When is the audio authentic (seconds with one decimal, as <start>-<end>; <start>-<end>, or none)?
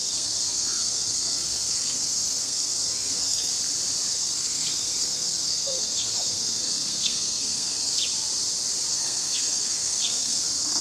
3.5-4.1; 8.0-8.9